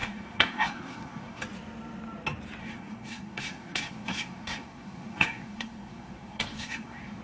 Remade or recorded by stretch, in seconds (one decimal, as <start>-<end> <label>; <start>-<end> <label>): 0.0-1.4 remade; 1.4-2.6 recorded; 2.6-7.2 remade